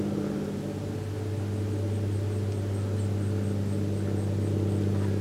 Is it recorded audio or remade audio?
recorded